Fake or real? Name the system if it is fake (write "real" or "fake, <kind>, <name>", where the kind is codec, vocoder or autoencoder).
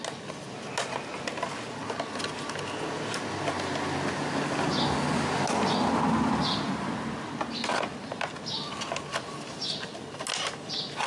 real